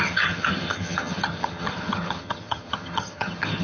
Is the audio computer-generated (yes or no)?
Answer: yes